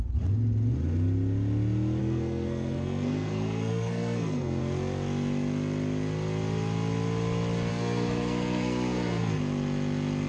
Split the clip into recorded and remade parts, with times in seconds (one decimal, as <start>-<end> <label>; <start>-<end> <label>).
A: 0.0-2.0 recorded; 2.0-4.6 remade; 4.6-7.7 recorded; 7.7-9.4 remade; 9.4-10.3 recorded